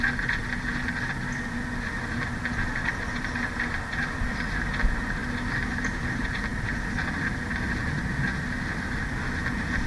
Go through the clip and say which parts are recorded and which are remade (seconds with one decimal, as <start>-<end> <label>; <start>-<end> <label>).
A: 0.0-9.9 recorded

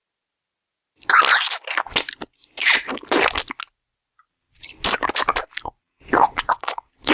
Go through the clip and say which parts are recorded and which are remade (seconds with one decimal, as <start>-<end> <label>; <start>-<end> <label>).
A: 0.0-4.3 recorded; 4.3-4.7 remade; 4.7-5.8 recorded; 5.8-7.1 remade